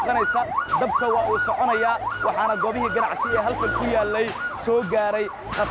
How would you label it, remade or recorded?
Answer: recorded